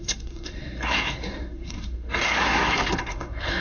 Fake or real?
fake